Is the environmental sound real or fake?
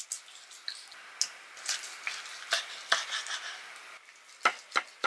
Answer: real